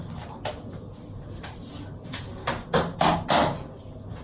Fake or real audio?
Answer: real